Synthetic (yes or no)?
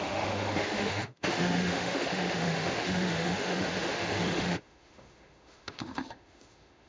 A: yes